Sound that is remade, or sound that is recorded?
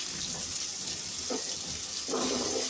recorded